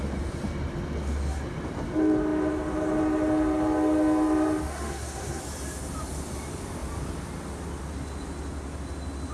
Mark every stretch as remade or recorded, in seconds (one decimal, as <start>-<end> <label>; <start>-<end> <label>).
0.0-4.7 recorded; 4.7-5.4 remade; 5.4-9.3 recorded